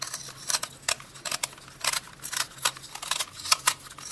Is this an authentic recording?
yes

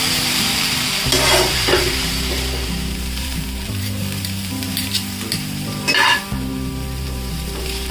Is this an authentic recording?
no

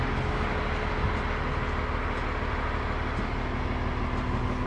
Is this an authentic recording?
yes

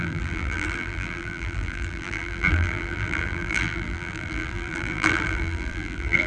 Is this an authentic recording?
no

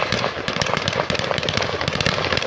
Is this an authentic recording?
no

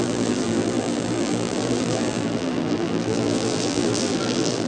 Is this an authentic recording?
no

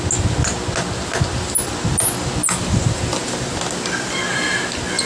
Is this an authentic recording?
yes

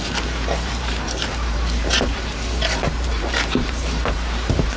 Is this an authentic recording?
no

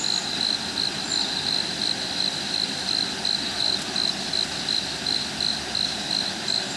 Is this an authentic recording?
yes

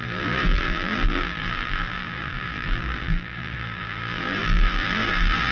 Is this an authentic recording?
no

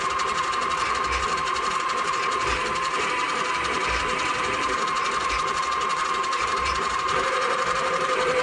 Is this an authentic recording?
no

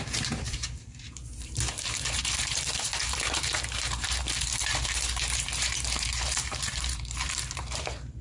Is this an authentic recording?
no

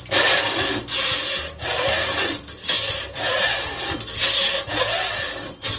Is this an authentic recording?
yes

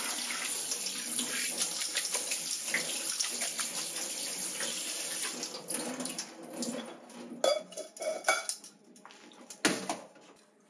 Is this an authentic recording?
yes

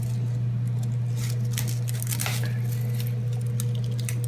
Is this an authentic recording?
yes